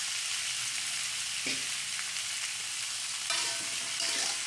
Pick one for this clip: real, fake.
real